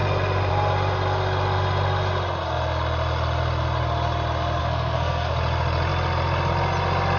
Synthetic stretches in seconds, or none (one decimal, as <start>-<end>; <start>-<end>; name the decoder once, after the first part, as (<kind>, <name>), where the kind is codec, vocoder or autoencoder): 4.6-5.3 (codec, SNAC)